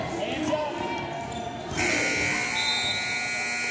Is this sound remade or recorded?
recorded